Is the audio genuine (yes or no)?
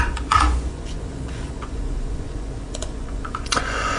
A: no